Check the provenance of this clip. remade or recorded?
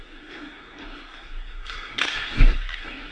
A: remade